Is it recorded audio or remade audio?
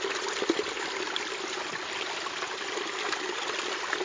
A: recorded